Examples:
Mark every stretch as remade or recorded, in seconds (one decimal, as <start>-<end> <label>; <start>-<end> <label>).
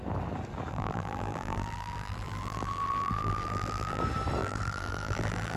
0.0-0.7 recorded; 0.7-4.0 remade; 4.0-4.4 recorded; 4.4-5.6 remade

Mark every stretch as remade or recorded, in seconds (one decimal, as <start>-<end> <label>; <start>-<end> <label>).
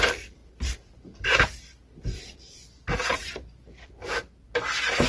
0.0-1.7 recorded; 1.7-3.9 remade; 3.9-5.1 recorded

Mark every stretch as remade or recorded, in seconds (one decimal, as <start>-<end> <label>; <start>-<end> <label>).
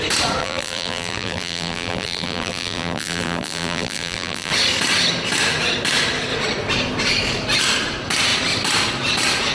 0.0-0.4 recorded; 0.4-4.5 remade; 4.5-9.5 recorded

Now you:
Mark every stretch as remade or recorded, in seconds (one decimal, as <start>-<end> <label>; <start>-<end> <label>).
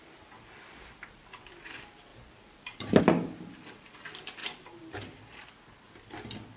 0.0-2.1 recorded; 2.1-3.0 remade; 3.0-4.4 recorded; 4.4-6.1 remade; 6.1-6.6 recorded